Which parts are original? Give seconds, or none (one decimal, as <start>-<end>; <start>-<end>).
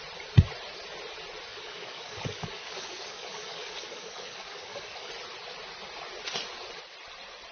0.0-1.5; 5.1-7.5